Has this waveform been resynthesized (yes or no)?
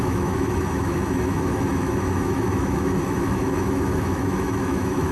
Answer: yes